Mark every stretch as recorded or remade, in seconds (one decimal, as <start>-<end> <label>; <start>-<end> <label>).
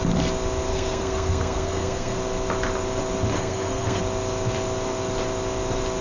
0.0-0.7 recorded; 0.7-2.2 remade; 2.2-3.3 recorded; 3.3-4.0 remade; 4.0-6.0 recorded